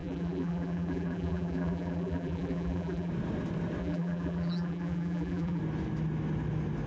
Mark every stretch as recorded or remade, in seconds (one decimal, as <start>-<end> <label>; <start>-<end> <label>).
0.0-3.1 remade; 3.1-3.8 recorded; 3.8-5.6 remade; 5.6-6.9 recorded